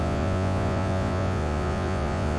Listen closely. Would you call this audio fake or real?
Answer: fake